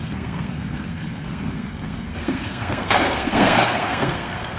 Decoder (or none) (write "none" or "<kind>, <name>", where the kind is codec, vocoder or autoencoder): codec, SNAC